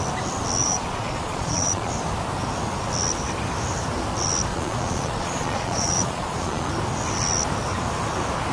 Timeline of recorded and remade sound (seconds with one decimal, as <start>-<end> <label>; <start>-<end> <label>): 0.0-0.6 recorded; 0.6-1.9 remade; 1.9-4.5 recorded; 4.5-6.7 remade; 6.7-8.5 recorded